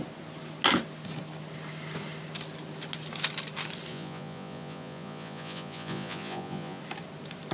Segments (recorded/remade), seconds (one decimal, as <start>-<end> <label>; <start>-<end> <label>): 0.0-3.9 recorded; 3.9-6.8 remade; 6.8-7.5 recorded